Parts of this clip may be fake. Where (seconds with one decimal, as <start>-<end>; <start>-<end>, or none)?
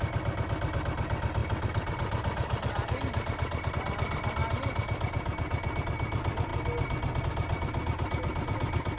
none